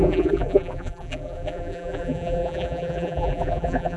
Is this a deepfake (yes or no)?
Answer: yes